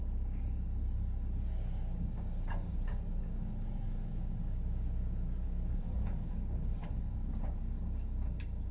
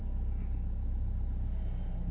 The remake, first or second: first